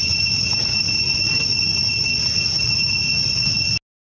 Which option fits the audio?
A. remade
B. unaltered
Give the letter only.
B